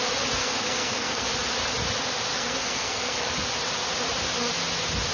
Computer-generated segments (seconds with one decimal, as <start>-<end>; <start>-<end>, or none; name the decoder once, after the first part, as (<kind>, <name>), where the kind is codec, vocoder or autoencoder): 0.4-1.3 (codec, SNAC); 2.3-3.3

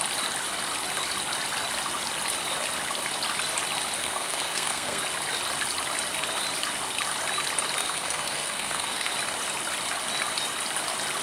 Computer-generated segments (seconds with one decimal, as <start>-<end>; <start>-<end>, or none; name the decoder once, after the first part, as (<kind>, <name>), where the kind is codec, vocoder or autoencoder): 4.0-5.0 (codec, SNAC); 7.8-9.1

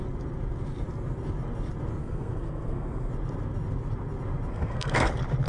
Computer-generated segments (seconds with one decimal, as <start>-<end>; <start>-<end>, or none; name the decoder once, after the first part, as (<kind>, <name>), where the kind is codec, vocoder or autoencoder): 2.0-3.1 (codec, SNAC); 4.5-5.1